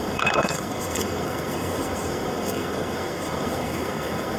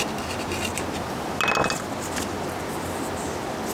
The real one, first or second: second